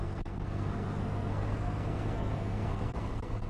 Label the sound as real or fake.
fake